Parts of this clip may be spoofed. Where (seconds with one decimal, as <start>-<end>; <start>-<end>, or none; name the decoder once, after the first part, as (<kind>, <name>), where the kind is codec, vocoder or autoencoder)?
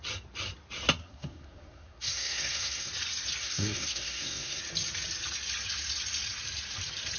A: 1.0-2.9 (codec, SNAC); 3.4-4.6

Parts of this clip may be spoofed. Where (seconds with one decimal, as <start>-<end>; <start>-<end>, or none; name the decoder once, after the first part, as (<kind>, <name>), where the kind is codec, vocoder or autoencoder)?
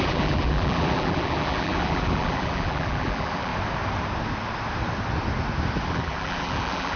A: 0.0-3.5 (vocoder, BigVGAN v2); 5.9-7.0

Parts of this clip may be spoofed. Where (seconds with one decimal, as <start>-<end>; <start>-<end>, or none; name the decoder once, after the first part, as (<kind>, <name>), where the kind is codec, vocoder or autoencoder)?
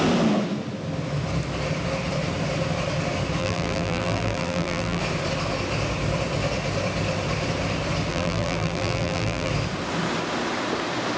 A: 3.4-5.0 (vocoder, BigVGAN v2); 8.1-9.5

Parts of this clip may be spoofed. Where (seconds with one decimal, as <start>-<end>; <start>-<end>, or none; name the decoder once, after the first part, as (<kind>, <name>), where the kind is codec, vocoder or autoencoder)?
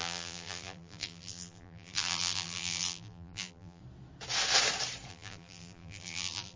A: 0.0-3.8 (vocoder, BigVGAN v2); 5.1-6.6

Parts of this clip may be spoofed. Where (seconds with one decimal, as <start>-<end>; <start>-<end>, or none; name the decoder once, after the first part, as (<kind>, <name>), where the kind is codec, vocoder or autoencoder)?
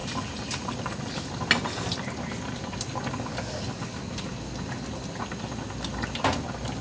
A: 0.0-1.1 (vocoder, BigVGAN v2)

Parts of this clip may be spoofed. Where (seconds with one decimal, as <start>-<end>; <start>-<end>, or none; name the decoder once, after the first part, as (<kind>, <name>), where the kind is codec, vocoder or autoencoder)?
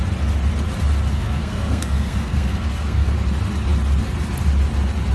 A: 1.1-3.1 (codec, SNAC)